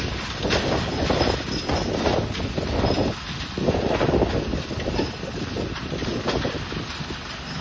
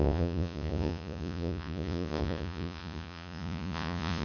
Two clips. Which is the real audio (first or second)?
first